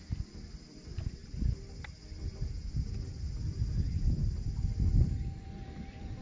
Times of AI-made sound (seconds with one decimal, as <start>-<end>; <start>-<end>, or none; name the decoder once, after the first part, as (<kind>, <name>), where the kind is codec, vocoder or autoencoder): 0.0-1.2 (vocoder, BigVGAN v2); 4.9-6.2